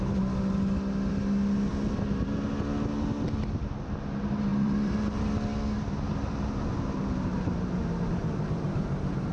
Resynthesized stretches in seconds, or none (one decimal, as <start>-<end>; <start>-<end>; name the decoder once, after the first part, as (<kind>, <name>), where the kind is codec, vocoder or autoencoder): 1.7-2.5 (vocoder, BigVGAN v2); 4.5-5.3; 6.1-9.3